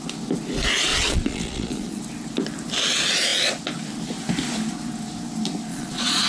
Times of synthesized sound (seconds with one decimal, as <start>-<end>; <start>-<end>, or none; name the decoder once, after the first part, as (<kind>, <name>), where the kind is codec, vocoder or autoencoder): 0.9-2.0 (vocoder, Vocos); 5.7-6.3